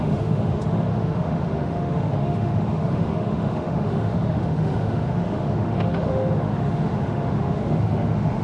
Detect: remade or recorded remade